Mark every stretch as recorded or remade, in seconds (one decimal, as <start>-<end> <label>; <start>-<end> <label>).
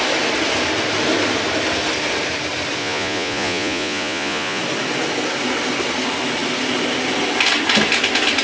0.0-2.8 recorded; 2.8-4.6 remade; 4.6-8.4 recorded